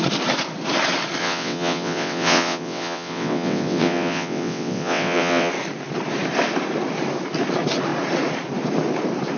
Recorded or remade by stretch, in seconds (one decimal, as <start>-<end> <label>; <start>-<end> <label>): 0.0-1.2 recorded; 1.2-5.5 remade; 5.5-9.4 recorded

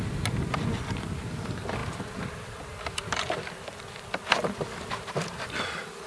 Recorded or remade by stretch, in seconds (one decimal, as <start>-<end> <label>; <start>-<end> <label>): 0.0-1.8 recorded; 1.8-5.5 remade; 5.5-6.1 recorded

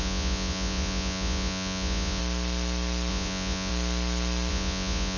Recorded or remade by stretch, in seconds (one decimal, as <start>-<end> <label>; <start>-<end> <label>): 0.0-2.2 remade; 2.2-3.1 recorded; 3.1-3.7 remade; 3.7-4.5 recorded; 4.5-5.2 remade